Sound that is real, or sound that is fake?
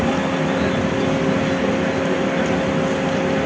real